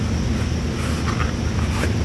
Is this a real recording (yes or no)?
yes